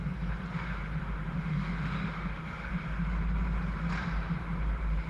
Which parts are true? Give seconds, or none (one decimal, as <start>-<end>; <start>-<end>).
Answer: 0.0-1.0; 2.7-5.1